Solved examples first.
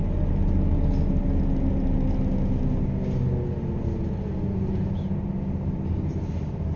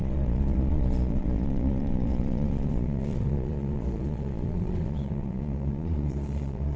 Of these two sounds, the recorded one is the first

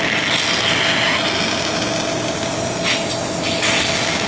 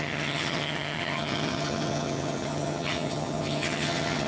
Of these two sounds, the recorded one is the first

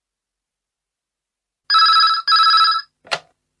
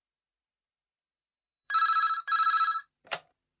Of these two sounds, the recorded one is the first